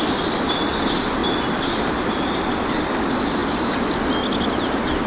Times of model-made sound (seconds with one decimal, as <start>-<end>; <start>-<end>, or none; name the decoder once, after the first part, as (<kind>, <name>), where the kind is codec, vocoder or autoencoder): none